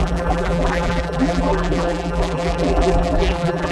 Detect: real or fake fake